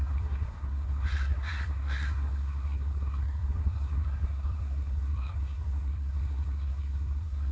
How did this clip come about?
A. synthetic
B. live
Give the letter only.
A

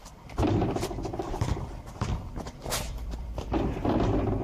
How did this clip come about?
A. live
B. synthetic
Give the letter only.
B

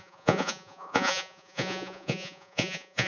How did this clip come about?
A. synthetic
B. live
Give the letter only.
A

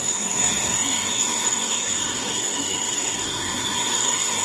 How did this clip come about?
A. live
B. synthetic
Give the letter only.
B